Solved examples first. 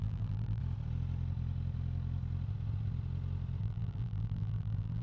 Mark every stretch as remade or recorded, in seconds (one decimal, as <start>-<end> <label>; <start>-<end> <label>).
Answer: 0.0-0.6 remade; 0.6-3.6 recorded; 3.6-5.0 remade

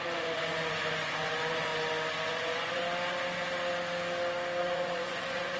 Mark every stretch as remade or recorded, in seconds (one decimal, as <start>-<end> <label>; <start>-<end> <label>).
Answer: 0.0-1.7 remade; 1.7-2.3 recorded; 2.3-2.8 remade; 2.8-4.6 recorded; 4.6-5.6 remade

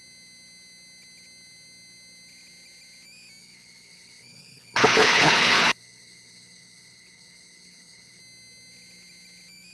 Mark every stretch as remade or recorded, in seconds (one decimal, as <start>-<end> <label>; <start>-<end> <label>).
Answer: 0.0-3.4 recorded; 3.4-8.2 remade; 8.2-9.7 recorded

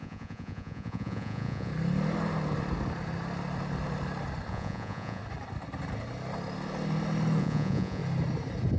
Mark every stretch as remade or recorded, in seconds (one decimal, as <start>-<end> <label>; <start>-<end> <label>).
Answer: 0.0-1.7 remade; 1.7-4.5 recorded; 4.5-5.2 remade; 5.2-7.4 recorded; 7.4-8.0 remade; 8.0-8.8 recorded

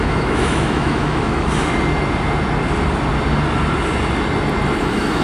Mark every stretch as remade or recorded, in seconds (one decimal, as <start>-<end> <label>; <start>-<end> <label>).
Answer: 0.0-1.7 remade; 1.7-4.8 recorded; 4.8-5.2 remade